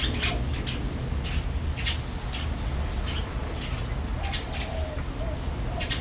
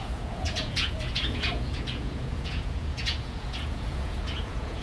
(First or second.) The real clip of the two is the first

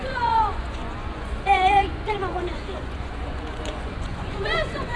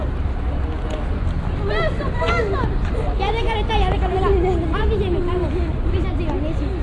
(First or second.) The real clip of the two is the second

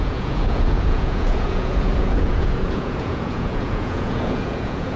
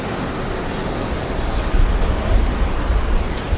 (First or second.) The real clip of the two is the second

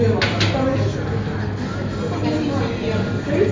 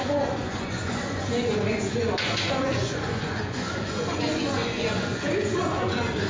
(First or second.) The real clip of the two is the first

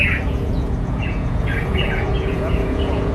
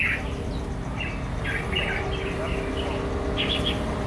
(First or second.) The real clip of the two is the second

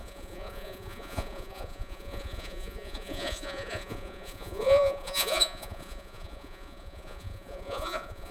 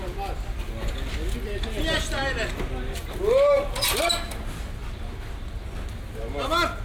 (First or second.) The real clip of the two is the second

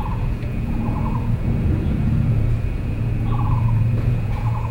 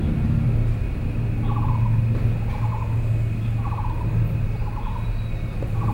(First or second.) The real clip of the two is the second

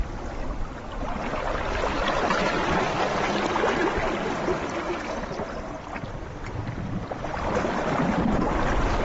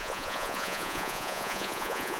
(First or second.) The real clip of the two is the first